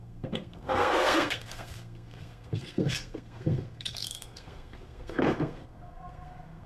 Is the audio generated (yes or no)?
yes